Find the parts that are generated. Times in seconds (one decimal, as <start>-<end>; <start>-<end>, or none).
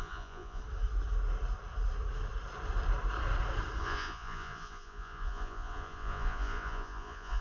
0.0-0.6; 3.8-7.4